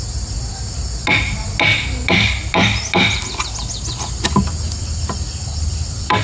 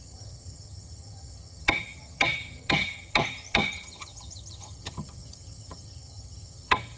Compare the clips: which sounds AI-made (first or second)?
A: second